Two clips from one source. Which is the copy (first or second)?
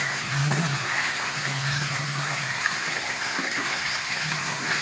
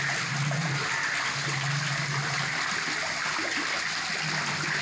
first